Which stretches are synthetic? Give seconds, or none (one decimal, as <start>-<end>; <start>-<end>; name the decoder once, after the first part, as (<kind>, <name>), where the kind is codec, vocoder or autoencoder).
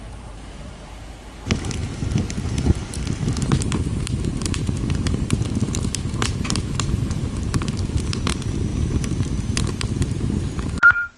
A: 0.0-11.2 (vocoder, BigVGAN v2)